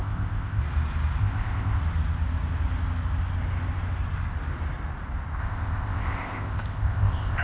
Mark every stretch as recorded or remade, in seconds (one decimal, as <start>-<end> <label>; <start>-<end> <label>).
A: 0.0-0.6 remade; 0.6-1.2 recorded; 1.2-1.8 remade; 1.8-5.4 recorded; 5.4-7.4 remade